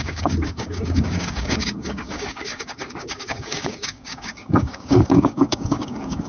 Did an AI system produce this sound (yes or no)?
yes